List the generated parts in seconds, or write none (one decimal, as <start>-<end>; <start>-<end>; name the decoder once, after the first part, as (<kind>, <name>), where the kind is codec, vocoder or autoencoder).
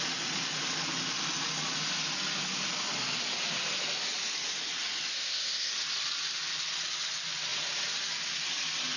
5.1-5.7 (codec, ZipCodec)